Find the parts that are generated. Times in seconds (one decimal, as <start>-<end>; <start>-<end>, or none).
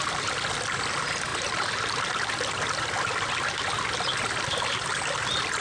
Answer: none